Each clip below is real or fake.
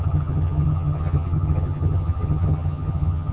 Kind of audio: fake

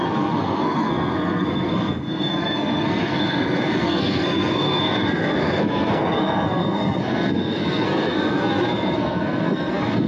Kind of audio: fake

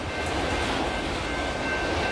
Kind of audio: real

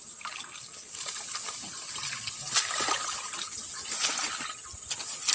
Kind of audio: real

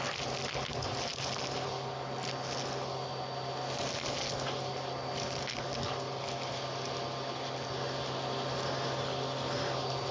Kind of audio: real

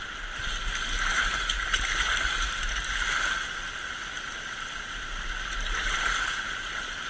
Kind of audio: real